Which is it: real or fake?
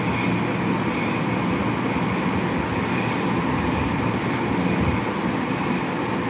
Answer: real